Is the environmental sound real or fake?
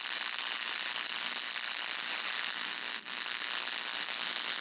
real